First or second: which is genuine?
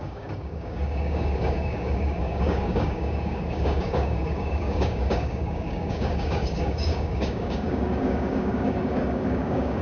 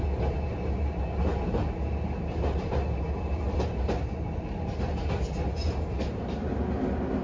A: second